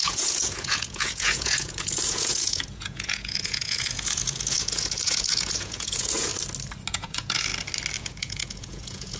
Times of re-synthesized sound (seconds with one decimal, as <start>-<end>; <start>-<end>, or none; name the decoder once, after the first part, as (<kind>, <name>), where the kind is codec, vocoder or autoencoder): 0.0-6.3 (vocoder, Vocos); 6.9-7.5; 8.0-9.2